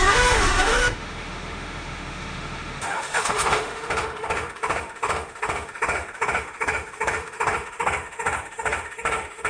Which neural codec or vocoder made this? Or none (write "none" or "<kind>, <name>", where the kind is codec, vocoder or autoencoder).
autoencoder, DAC-VAE